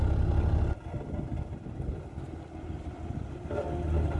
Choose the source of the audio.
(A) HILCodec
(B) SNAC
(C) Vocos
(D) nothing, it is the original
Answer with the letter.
D